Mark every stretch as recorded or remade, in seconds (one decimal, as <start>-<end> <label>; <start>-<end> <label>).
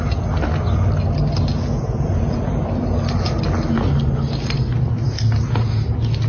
0.0-1.5 recorded; 1.5-2.5 remade; 2.5-6.3 recorded